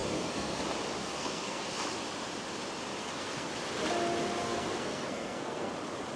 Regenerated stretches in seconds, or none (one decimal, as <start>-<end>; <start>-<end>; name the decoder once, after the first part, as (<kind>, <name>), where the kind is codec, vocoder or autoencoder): 0.0-0.6 (codec, SNAC); 1.0-1.7; 3.0-3.5; 4.4-5.7